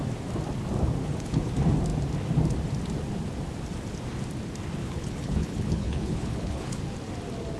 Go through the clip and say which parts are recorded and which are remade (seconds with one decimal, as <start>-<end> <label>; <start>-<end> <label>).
0.0-1.0 recorded; 1.0-1.5 remade; 1.5-4.8 recorded; 4.8-6.8 remade; 6.8-7.6 recorded